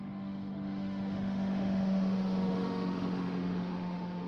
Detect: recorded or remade remade